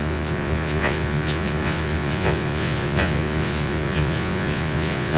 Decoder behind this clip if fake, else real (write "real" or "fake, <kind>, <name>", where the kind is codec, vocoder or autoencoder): fake, vocoder, Vocos